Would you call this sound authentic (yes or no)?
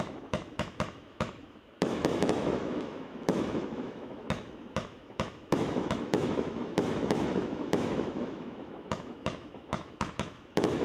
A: no